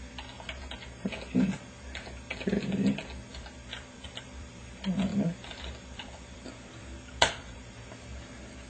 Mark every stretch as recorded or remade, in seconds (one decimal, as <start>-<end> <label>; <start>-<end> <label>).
0.0-3.3 recorded; 3.3-4.6 remade; 4.6-5.1 recorded; 5.1-7.7 remade; 7.7-8.7 recorded